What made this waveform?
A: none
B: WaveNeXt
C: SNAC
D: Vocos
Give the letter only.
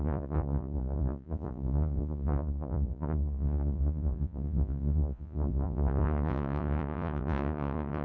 D